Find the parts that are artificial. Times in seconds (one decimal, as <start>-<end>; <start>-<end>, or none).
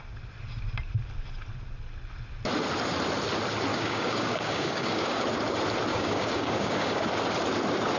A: 3.7-5.2; 5.9-7.0